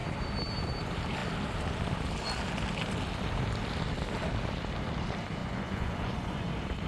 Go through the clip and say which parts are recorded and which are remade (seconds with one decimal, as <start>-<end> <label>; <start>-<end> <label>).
0.0-5.4 recorded; 5.4-6.5 remade; 6.5-6.9 recorded